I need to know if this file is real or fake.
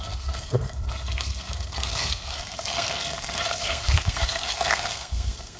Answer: fake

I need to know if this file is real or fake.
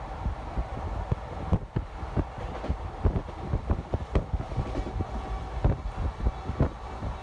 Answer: real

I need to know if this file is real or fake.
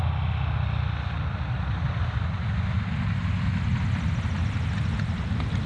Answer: real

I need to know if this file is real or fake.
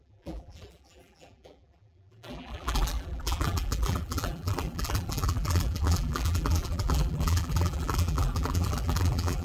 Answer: fake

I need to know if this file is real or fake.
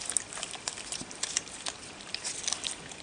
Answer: real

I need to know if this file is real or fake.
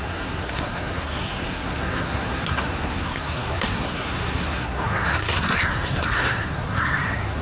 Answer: fake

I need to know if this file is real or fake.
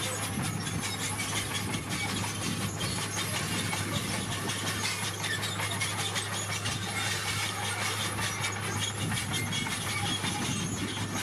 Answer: real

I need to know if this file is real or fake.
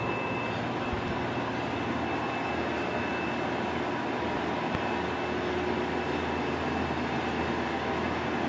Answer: real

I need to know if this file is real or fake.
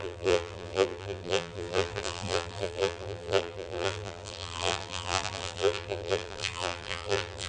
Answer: fake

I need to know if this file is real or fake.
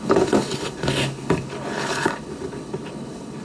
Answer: fake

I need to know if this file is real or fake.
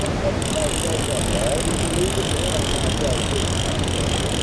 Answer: real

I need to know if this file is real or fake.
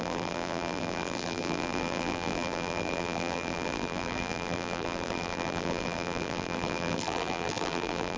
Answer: fake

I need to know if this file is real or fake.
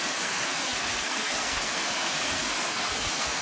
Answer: fake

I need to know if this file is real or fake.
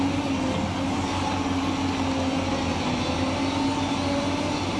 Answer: real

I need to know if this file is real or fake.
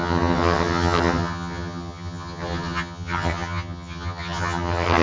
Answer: fake